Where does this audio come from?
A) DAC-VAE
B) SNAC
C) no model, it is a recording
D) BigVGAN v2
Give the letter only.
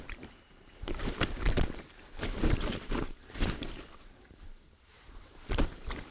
D